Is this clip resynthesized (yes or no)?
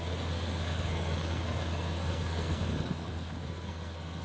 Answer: yes